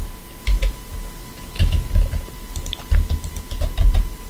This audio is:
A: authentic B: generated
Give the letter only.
A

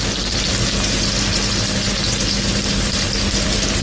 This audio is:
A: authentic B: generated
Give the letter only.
A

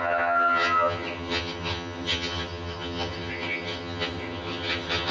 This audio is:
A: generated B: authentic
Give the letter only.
A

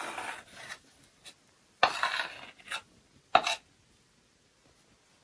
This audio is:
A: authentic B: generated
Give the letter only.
A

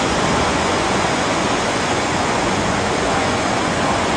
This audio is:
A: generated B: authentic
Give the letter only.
A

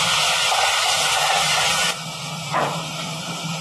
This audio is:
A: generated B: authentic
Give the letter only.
A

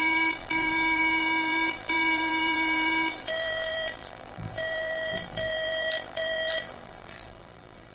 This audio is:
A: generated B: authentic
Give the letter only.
A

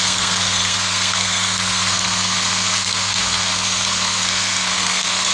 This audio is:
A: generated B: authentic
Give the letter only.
A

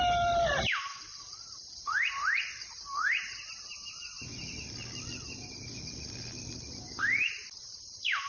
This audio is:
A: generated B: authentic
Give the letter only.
B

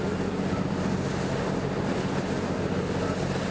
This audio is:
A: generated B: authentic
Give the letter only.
B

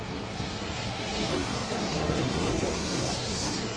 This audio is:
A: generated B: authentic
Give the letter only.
A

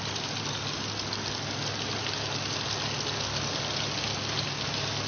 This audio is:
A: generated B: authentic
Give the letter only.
B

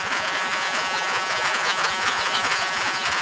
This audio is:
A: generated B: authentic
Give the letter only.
A